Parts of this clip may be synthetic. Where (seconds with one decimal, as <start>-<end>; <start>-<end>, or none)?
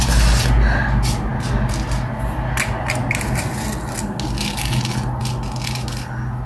none